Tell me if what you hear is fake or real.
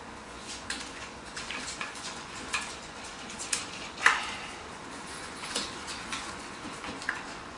fake